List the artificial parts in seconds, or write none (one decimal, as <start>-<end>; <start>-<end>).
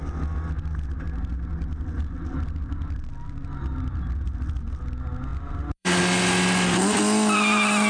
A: 5.3-6.0